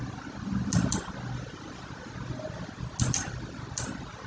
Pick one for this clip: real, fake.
real